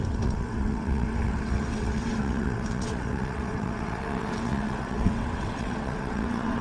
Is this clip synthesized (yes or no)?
yes